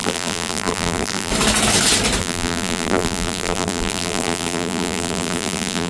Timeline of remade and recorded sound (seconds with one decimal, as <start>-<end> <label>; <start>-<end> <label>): 0.0-1.3 remade; 1.3-2.2 recorded; 2.2-5.9 remade